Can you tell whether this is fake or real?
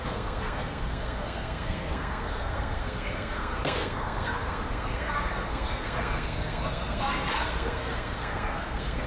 fake